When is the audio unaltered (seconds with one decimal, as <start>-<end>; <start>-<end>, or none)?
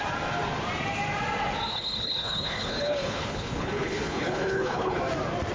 0.0-1.7; 5.0-5.5